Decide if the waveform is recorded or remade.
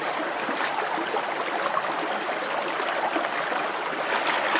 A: recorded